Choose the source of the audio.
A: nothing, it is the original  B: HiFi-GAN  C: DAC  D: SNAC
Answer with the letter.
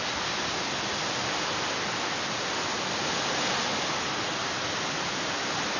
A